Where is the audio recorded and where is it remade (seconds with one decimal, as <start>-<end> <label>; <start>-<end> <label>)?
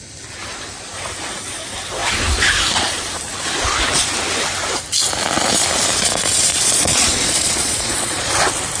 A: 0.0-6.5 recorded; 6.5-8.3 remade; 8.3-8.8 recorded